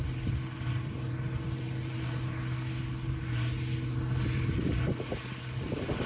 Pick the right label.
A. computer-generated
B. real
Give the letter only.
B